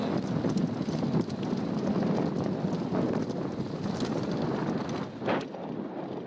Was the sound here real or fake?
real